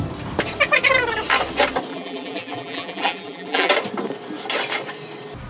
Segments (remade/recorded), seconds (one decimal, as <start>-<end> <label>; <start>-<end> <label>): 0.0-1.9 recorded; 1.9-3.7 remade; 3.7-5.5 recorded